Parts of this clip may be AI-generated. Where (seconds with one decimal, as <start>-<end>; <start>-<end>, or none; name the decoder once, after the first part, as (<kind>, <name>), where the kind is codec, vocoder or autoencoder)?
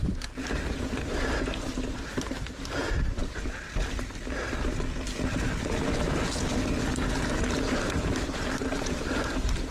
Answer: 0.0-3.2 (vocoder, BigVGAN v2); 7.7-9.7